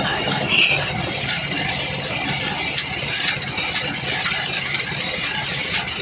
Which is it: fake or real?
real